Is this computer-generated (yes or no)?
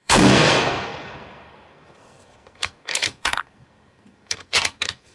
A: yes